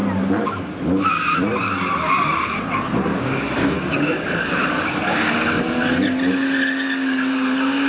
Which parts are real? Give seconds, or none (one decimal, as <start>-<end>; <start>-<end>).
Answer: 0.0-3.1; 5.3-7.9